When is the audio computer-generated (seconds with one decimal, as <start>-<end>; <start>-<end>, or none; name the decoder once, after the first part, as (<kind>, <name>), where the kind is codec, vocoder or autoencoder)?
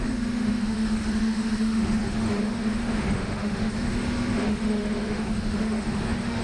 0.0-6.4 (autoencoder, DAC-VAE)